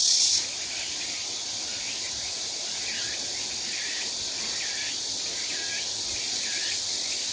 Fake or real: real